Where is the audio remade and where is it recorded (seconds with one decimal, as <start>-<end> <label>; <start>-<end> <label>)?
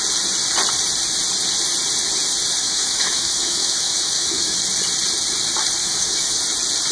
0.0-2.6 recorded; 2.6-4.6 remade; 4.6-5.8 recorded; 5.8-6.4 remade; 6.4-6.9 recorded